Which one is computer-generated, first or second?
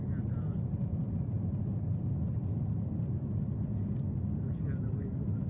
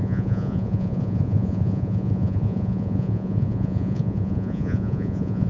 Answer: second